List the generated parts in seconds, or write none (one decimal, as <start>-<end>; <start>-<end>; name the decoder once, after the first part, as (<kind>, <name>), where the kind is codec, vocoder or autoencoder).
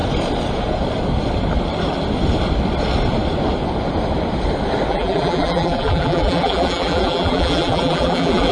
4.9-8.5 (vocoder, BigVGAN v2)